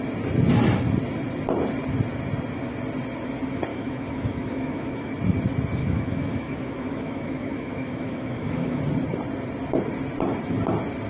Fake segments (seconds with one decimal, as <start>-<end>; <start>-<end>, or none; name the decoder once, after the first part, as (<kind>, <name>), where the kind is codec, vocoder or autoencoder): 3.7-5.1 (autoencoder, DAC-VAE); 5.8-8.8